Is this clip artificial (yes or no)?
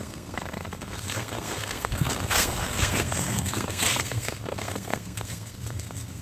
yes